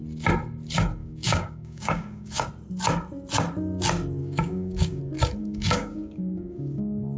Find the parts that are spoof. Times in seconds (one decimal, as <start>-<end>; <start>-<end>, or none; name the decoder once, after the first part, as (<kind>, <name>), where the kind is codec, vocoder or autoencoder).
1.0-2.5 (codec, DAC); 4.2-5.0; 5.4-7.2